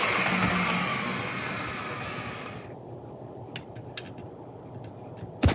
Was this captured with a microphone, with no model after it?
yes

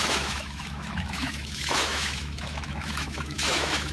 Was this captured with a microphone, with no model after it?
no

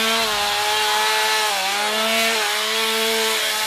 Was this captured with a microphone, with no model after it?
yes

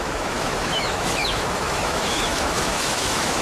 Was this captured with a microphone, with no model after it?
no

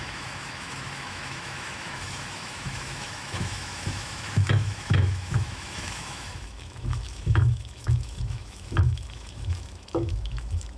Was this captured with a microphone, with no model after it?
no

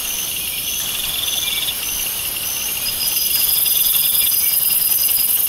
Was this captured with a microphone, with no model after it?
yes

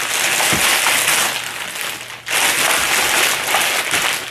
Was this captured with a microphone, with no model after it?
yes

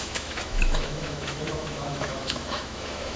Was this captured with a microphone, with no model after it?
no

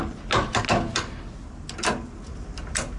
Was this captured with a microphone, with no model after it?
yes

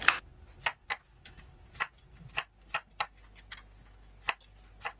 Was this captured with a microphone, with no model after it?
yes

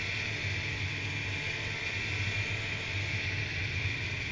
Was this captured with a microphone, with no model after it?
yes